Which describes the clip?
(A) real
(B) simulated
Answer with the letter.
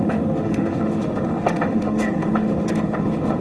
B